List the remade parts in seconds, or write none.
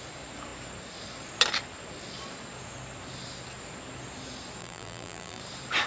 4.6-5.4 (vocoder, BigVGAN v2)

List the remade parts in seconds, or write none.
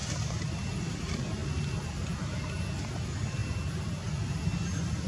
none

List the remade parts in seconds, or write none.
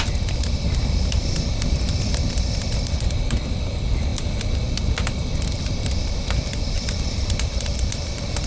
0.0-8.5 (vocoder, BigVGAN v2)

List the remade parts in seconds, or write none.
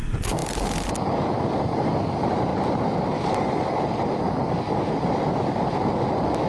2.5-3.7 (vocoder, BigVGAN v2)